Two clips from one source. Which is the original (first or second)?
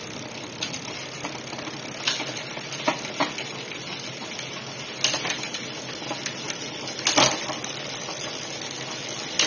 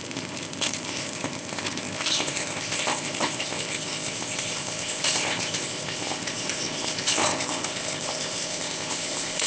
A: first